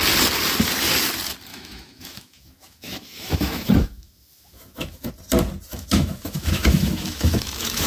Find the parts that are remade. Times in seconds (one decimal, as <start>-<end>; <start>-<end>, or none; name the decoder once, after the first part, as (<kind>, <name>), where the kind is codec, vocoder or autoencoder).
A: 1.5-5.1 (autoencoder, DAC-VAE); 5.7-7.9